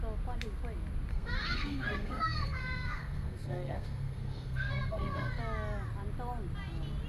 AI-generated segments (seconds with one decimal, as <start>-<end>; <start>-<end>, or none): 1.1-5.4